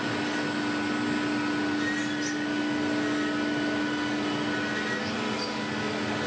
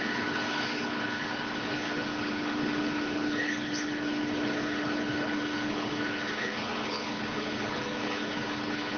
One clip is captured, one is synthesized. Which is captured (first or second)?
first